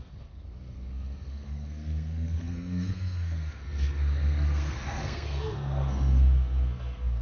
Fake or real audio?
fake